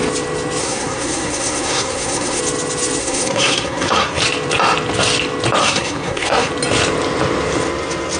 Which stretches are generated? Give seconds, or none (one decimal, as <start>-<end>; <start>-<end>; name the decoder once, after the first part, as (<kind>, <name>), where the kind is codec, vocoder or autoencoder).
0.6-2.4 (codec, SNAC); 3.0-4.2; 5.6-6.5